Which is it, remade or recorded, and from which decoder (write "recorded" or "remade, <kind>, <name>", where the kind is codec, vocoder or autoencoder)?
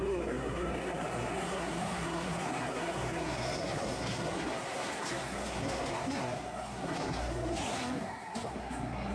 remade, codec, SNAC